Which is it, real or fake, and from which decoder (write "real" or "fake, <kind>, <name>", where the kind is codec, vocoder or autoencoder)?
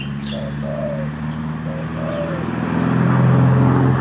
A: real